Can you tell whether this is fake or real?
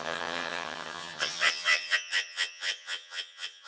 fake